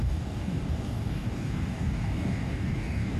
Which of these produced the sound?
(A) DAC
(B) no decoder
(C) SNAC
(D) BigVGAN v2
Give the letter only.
A